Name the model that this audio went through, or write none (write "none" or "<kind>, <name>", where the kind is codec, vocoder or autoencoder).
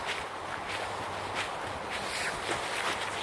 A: none